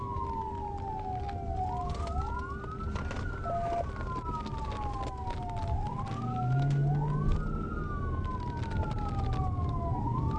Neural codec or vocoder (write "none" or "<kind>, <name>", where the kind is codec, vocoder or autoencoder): none